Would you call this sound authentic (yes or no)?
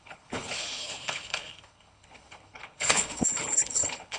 no